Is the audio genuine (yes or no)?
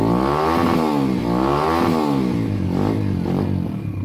yes